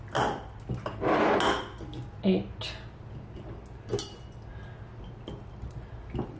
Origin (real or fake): real